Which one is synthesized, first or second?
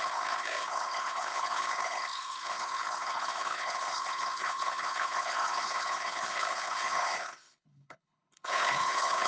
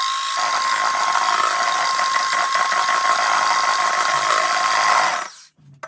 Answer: first